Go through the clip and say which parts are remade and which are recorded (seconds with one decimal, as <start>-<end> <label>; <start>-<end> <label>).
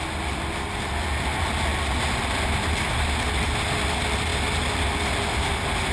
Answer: 0.0-5.9 recorded